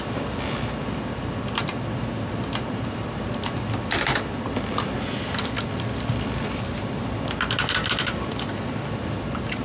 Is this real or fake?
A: real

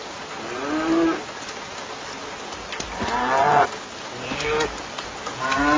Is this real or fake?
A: real